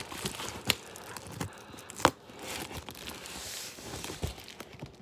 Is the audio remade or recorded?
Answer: recorded